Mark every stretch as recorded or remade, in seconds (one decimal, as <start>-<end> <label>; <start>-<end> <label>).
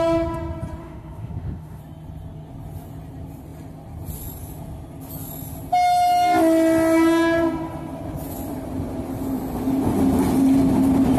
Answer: 0.0-0.8 recorded; 0.8-1.8 remade; 1.8-11.2 recorded